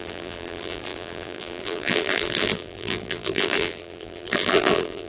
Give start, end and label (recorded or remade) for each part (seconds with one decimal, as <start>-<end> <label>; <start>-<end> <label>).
0.0-5.1 remade